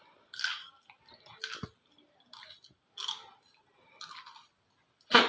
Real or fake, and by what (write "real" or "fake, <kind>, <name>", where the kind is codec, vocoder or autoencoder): real